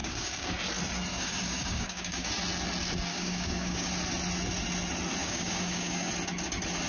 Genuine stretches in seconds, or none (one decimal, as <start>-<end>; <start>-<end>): 0.5-1.1; 2.3-3.1; 3.9-5.2; 6.1-6.9